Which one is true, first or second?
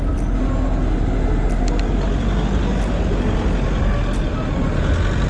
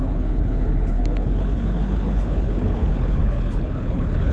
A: first